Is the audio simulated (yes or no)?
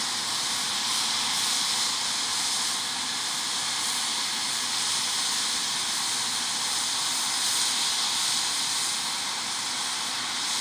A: no